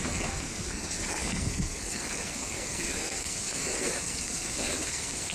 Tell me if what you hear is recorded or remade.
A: remade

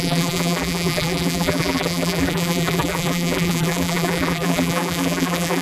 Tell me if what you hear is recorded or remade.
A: remade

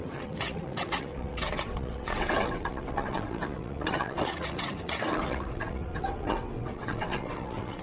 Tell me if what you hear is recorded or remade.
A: remade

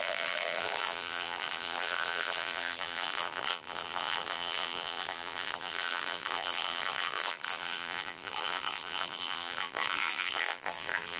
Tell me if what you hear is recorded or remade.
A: remade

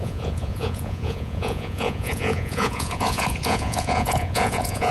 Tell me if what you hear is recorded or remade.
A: remade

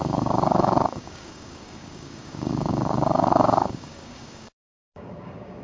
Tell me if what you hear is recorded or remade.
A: remade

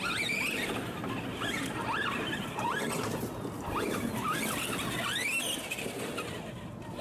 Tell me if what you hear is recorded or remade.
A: recorded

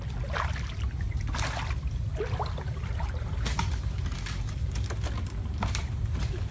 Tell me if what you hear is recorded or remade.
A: recorded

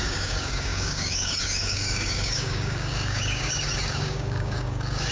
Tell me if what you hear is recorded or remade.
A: remade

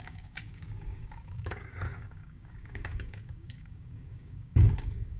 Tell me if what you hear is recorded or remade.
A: remade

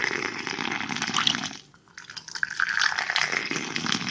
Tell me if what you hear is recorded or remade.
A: recorded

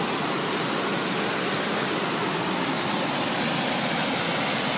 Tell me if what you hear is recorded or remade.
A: recorded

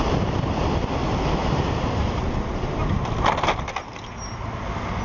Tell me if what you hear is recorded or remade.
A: recorded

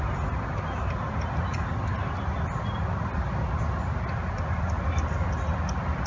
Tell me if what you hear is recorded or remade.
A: recorded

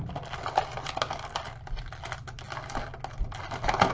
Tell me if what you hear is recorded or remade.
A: recorded